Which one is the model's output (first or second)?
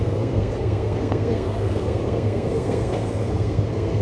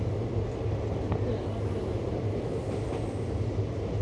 first